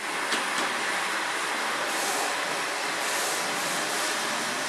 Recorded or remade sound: recorded